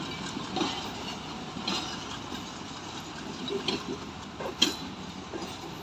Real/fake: real